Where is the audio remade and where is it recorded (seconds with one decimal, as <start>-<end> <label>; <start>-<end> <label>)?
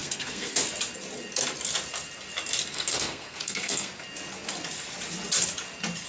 0.0-0.5 remade; 0.5-2.7 recorded; 2.7-3.9 remade; 3.9-6.1 recorded